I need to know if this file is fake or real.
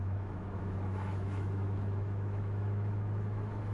fake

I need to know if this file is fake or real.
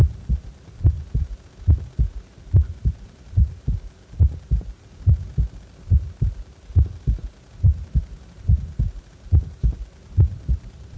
real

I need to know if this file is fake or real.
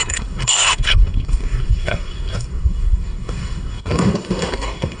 fake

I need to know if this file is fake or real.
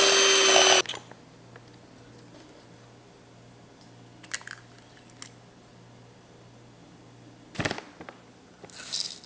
real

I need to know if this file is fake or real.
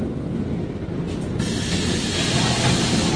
real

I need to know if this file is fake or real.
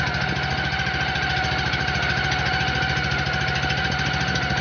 real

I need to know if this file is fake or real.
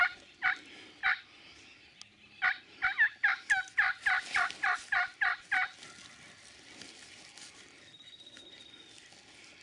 real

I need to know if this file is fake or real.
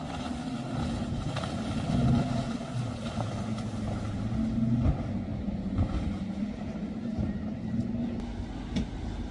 real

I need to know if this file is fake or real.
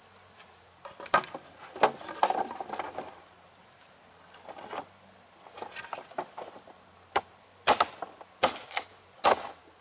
real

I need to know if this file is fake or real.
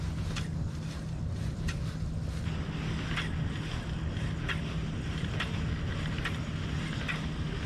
real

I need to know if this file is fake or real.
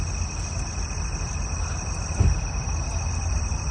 real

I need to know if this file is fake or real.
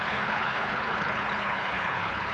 fake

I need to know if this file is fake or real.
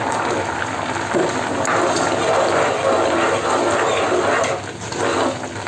real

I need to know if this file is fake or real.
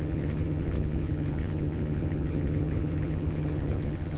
fake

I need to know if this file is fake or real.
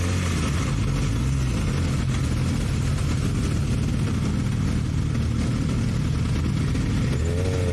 real